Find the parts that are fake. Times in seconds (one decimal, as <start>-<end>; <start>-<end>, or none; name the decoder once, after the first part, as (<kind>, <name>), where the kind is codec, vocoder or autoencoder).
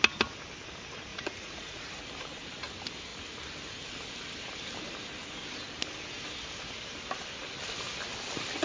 1.1-2.0 (vocoder, Vocos)